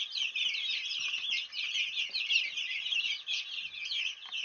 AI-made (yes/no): no